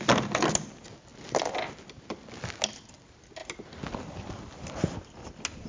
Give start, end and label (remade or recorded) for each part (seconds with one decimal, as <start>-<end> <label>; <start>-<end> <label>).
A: 0.0-5.7 recorded

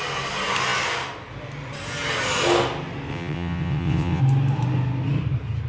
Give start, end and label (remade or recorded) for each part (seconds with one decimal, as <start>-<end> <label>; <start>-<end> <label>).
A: 0.0-3.1 recorded; 3.1-4.2 remade; 4.2-5.7 recorded

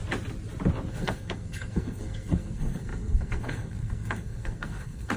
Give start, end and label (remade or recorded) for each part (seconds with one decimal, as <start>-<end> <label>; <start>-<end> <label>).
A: 0.0-0.9 recorded; 0.9-5.2 remade